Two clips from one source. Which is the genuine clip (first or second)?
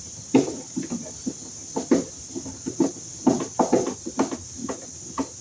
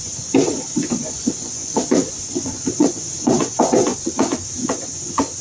first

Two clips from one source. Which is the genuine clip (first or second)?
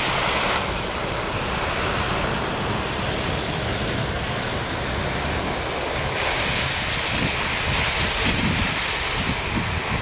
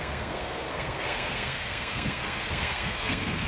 first